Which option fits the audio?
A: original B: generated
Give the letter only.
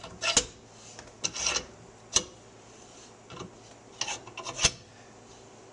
A